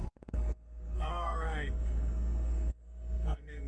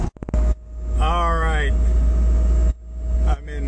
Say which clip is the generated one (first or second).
first